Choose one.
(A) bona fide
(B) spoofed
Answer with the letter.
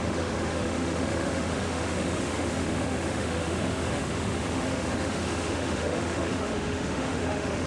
B